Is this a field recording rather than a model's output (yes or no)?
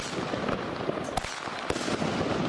yes